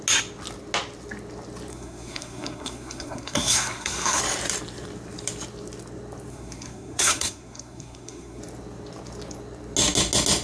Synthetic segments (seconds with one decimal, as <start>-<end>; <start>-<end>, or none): 1.7-4.2; 6.3-8.4